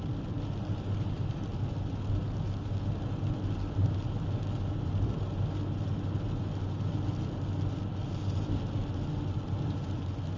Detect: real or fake real